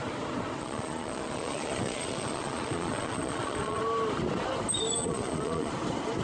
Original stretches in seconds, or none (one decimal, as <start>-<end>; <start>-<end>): 0.0-0.6; 3.8-5.0; 5.7-6.2